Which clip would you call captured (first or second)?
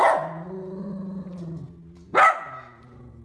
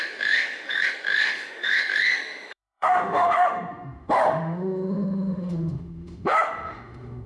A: first